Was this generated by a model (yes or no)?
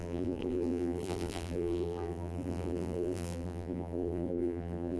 yes